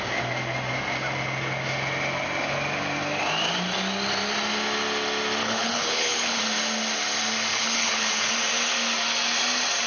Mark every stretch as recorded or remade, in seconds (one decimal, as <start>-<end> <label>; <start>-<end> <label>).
0.0-5.4 recorded; 5.4-6.4 remade; 6.4-7.5 recorded; 7.5-8.3 remade; 8.3-9.9 recorded